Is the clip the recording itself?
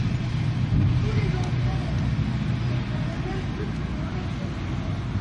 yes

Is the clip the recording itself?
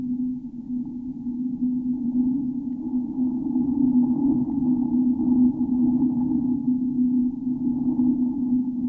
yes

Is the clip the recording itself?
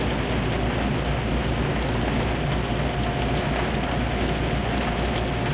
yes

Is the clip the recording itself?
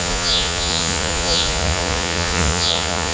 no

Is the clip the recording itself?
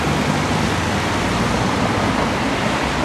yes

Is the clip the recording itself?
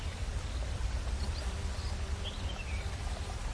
yes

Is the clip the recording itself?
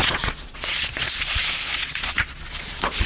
no